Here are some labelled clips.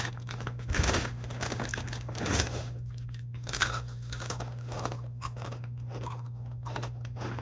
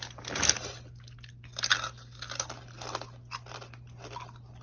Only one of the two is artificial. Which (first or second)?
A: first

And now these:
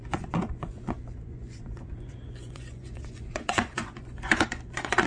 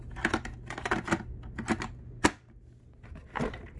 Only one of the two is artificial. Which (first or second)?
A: first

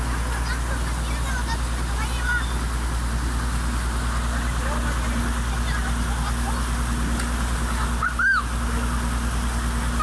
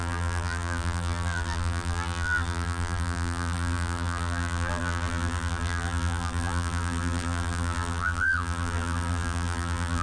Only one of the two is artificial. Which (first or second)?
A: second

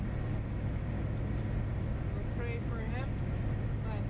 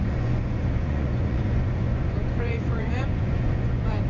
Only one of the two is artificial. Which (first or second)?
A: second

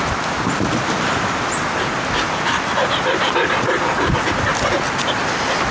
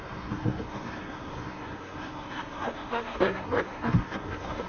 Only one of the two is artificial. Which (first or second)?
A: second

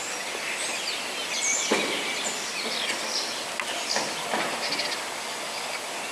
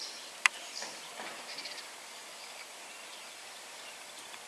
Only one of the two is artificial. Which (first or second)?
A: second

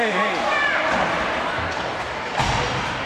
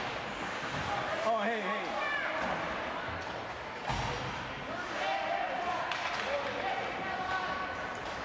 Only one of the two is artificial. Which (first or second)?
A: first